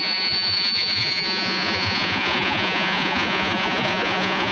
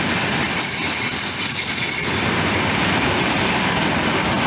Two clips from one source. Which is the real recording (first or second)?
second